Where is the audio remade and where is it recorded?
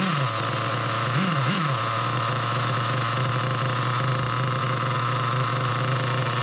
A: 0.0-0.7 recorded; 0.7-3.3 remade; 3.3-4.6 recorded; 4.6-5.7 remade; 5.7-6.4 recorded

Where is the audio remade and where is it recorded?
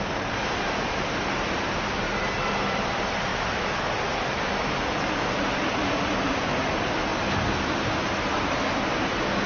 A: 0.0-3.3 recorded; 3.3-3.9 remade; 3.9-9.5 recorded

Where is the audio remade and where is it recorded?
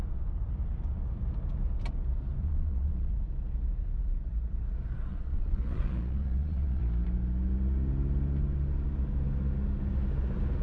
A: 0.0-2.4 recorded; 2.4-3.1 remade; 3.1-5.1 recorded; 5.1-6.8 remade; 6.8-10.6 recorded